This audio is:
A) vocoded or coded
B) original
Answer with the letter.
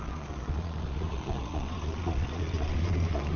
A